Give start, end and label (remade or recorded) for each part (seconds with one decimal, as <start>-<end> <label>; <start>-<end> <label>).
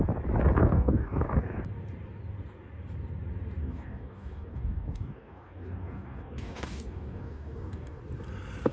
0.0-0.6 recorded; 0.6-1.6 remade; 1.6-3.6 recorded; 3.6-8.0 remade; 8.0-8.7 recorded